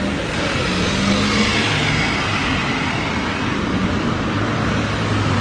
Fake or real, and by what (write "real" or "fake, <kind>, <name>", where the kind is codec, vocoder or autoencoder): real